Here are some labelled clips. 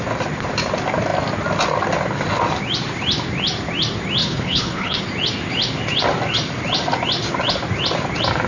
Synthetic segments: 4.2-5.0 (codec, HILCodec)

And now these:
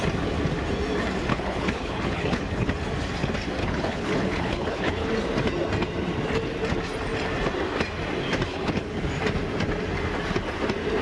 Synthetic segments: 1.3-2.7 (codec, HILCodec); 3.6-5.1; 8.5-9.1

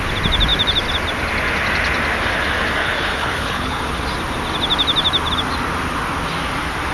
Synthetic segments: 2.8-3.8 (codec, HILCodec)

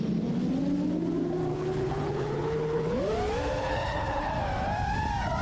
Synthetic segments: 1.5-3.1 (codec, HILCodec); 3.6-4.3

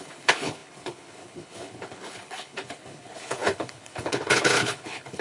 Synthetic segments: 0.0-5.2 (codec, HILCodec)

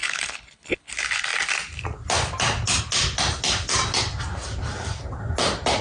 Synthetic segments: 0.0-0.9 (codec, HILCodec)

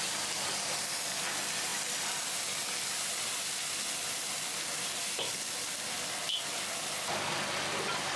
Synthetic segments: none